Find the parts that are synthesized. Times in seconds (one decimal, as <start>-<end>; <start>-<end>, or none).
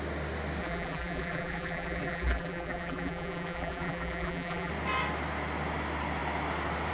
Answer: 0.6-4.7